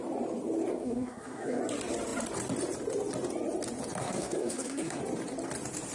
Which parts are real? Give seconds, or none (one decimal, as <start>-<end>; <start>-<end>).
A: 0.0-0.7; 1.6-4.0; 5.0-5.9